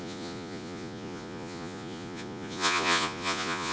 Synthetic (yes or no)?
yes